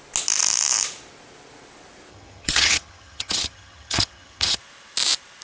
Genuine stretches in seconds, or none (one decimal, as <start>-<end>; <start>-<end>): 0.0-2.1; 4.6-5.4